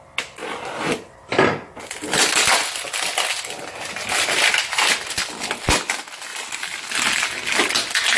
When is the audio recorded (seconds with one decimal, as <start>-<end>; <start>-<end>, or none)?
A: 0.0-8.2